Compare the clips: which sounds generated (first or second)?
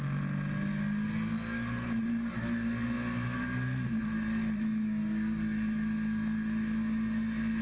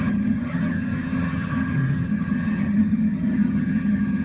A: second